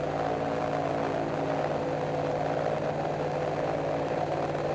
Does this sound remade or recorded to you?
recorded